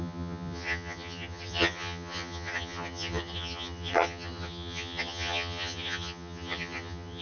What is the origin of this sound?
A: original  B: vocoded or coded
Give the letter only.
B